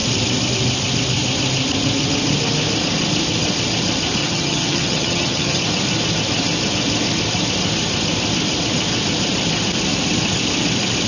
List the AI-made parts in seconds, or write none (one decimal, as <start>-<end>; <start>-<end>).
4.2-5.6